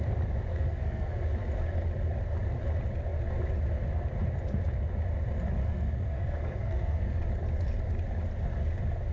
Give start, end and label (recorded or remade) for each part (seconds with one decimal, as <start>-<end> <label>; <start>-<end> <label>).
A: 0.0-0.5 recorded; 0.5-1.2 remade; 1.2-5.6 recorded; 5.6-7.2 remade; 7.2-9.1 recorded